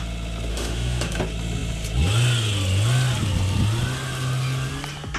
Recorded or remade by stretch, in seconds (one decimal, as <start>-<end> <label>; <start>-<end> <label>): 0.0-0.5 recorded; 0.5-1.2 remade; 1.2-5.2 recorded